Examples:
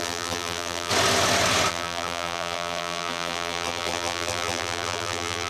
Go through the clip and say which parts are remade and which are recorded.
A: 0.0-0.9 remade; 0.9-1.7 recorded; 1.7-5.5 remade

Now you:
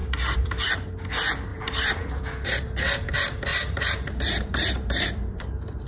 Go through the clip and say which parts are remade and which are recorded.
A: 0.0-0.7 remade; 0.7-1.5 recorded; 1.5-2.2 remade; 2.2-3.5 recorded; 3.5-5.9 remade

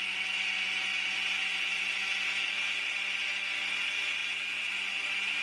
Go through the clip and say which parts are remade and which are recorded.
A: 0.0-4.2 recorded; 4.2-4.9 remade; 4.9-5.4 recorded

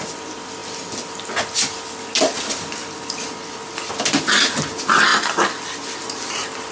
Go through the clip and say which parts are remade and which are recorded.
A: 0.0-6.7 recorded

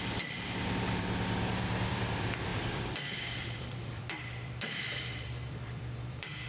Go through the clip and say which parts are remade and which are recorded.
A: 0.0-6.5 remade

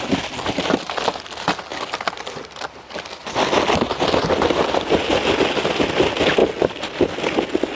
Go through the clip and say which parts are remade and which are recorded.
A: 0.0-7.8 recorded